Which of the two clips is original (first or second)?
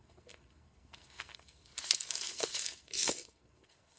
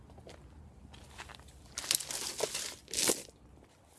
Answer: second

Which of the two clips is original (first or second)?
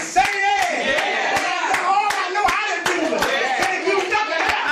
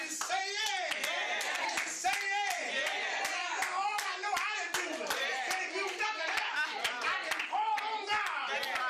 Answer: second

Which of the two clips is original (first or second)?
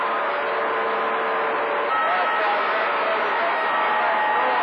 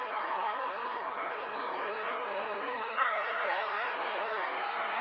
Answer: first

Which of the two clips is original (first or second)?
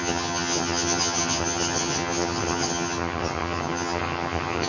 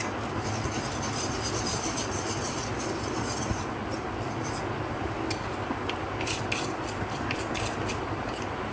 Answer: second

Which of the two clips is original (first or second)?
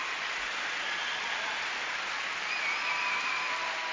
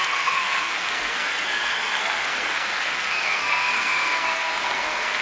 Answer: first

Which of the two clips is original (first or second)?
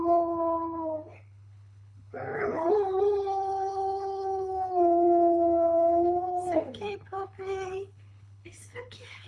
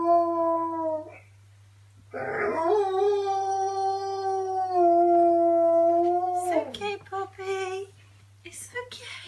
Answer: second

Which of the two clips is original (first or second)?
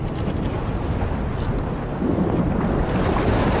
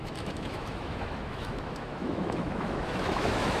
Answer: first